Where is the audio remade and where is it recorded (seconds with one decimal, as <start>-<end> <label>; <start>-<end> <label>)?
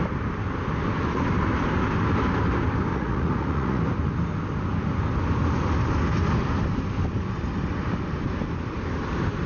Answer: 0.0-2.9 recorded; 2.9-3.8 remade; 3.8-9.5 recorded